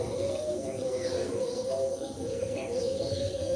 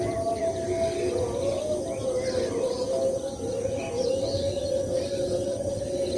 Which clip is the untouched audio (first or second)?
second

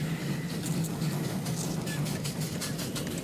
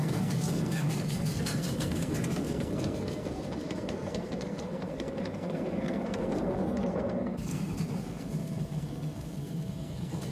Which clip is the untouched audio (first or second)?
first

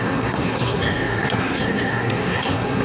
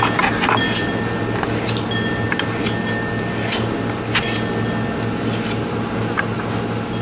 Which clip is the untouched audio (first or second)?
second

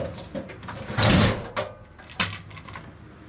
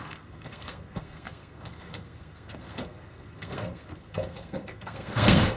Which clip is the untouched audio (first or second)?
first